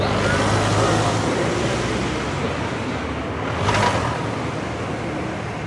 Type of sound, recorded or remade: recorded